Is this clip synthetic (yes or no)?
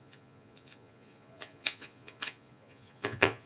yes